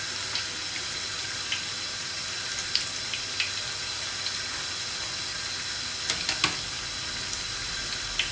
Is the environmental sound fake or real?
real